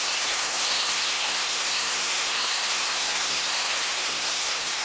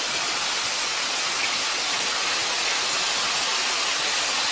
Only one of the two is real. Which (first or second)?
second